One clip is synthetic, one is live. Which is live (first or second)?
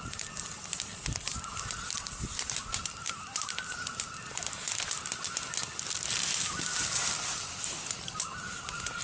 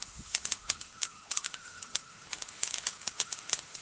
first